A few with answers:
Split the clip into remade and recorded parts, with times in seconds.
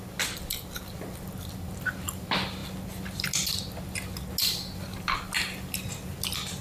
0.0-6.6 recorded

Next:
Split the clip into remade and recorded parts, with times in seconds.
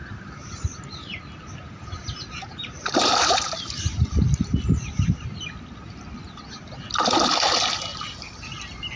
0.0-3.8 remade; 3.8-7.9 recorded; 7.9-8.5 remade; 8.5-9.0 recorded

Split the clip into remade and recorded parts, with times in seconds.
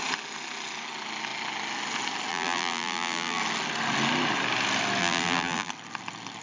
0.0-2.3 recorded; 2.3-3.4 remade; 3.4-5.0 recorded; 5.0-5.7 remade; 5.7-6.4 recorded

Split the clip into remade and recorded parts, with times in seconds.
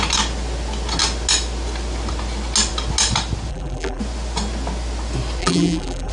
0.0-3.5 recorded; 3.5-4.0 remade; 4.0-5.4 recorded; 5.4-6.1 remade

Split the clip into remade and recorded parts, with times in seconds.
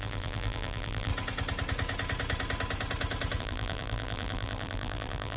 0.0-1.1 remade; 1.1-3.4 recorded; 3.4-5.4 remade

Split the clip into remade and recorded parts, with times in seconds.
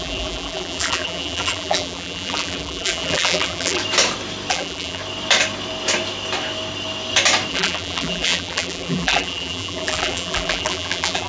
0.0-3.8 remade; 3.8-4.5 recorded; 4.5-5.0 remade; 5.0-7.5 recorded; 7.5-11.3 remade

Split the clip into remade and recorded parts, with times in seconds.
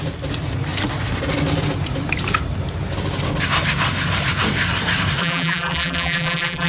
0.0-5.2 recorded; 5.2-6.7 remade